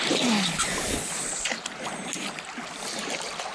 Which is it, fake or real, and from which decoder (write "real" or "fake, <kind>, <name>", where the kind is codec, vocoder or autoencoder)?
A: real